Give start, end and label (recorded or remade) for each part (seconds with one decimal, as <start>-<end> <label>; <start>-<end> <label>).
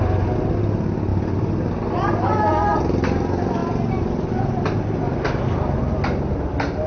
0.0-6.9 recorded